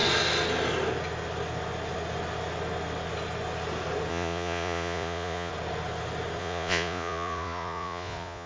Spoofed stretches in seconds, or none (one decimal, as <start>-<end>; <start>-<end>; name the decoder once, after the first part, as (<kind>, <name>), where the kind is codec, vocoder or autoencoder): 4.1-5.5 (vocoder, Vocos); 6.4-8.5